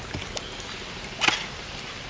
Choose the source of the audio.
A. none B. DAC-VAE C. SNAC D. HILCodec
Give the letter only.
A